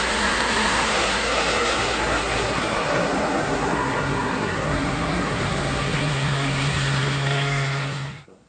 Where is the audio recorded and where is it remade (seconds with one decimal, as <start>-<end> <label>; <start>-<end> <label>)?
0.0-8.5 remade